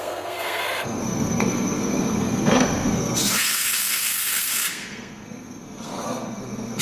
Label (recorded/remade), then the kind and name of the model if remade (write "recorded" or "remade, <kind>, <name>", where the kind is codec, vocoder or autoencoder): remade, codec, SNAC